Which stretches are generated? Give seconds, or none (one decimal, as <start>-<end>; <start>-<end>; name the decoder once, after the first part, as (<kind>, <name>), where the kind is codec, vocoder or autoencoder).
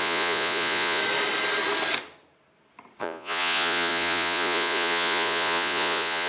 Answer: 0.0-1.0 (vocoder, Vocos); 3.0-6.3